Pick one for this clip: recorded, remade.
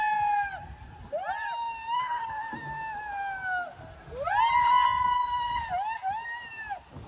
recorded